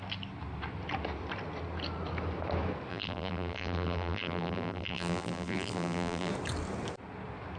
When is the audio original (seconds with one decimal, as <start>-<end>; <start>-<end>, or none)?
0.0-2.9; 6.3-7.6